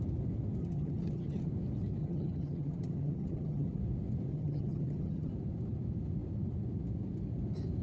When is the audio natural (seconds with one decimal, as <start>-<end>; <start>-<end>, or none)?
0.0-0.6; 1.5-2.0; 3.8-4.3; 5.3-7.8